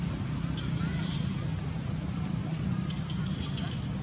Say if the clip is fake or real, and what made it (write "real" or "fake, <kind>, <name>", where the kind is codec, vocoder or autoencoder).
real